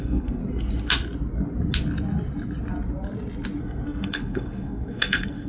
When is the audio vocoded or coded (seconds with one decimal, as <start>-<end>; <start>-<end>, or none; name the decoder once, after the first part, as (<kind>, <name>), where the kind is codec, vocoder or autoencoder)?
0.0-0.4 (codec, SNAC); 3.6-5.5

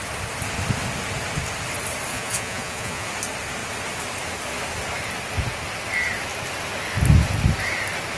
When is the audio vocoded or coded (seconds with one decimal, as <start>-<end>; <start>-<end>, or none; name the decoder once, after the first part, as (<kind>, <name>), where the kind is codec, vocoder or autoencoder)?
2.1-3.1 (vocoder, Vocos)